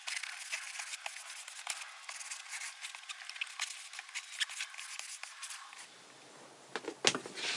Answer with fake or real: real